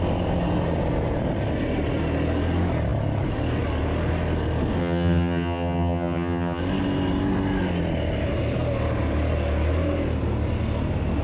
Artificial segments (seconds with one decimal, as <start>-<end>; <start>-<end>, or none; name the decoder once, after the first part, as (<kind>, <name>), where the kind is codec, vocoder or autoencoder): 4.8-6.6 (vocoder, HiFi-GAN)

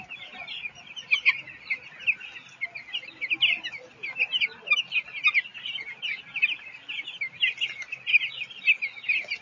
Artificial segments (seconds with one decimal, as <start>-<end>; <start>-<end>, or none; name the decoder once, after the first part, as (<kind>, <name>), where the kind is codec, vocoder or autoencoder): none

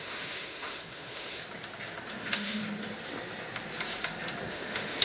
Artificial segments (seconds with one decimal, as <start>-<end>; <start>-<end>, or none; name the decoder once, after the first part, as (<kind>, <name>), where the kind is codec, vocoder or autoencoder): 0.0-1.4 (autoencoder, DAC-VAE); 2.1-2.6; 4.5-5.0

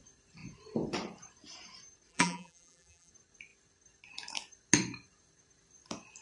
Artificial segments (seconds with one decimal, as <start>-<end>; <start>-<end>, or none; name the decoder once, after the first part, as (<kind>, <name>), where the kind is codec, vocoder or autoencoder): 2.1-3.1 (vocoder, BigVGAN v2)

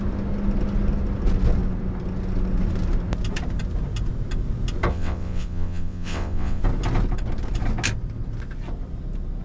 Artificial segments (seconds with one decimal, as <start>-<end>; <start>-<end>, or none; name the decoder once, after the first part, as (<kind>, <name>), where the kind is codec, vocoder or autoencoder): 4.9-6.6 (vocoder, WaveNeXt)

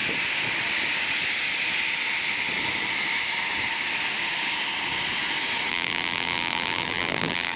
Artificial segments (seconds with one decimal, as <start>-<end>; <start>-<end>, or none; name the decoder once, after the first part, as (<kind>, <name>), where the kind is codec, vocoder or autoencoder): 5.7-7.6 (vocoder, BigVGAN v2)

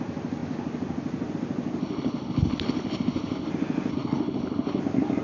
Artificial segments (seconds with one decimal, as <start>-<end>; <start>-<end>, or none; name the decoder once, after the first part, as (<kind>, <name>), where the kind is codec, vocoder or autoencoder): 1.8-3.5 (codec, HILCodec); 3.9-4.8